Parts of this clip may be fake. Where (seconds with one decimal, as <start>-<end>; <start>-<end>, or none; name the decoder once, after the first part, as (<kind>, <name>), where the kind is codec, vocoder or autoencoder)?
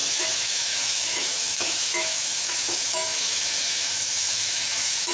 0.0-5.1 (autoencoder, DAC-VAE)